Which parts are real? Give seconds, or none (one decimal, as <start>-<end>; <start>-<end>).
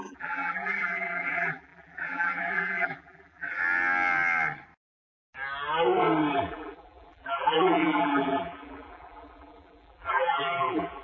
3.6-6.3